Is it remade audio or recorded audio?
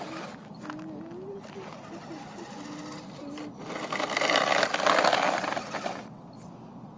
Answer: recorded